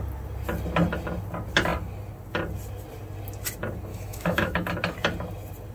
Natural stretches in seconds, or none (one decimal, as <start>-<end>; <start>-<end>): 0.0-3.9; 4.7-5.7